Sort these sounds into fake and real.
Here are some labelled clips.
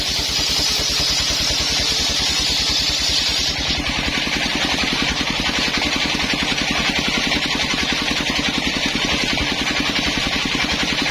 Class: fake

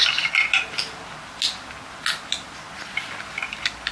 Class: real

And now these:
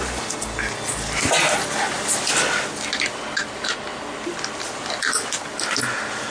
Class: real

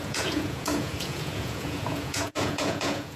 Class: fake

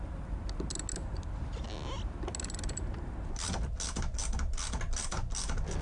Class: real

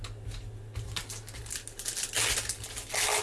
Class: real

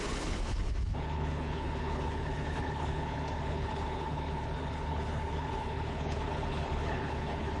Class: fake